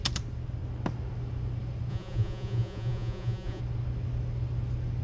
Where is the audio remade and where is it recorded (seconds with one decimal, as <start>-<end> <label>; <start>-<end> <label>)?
0.0-1.9 recorded; 1.9-3.6 remade; 3.6-5.0 recorded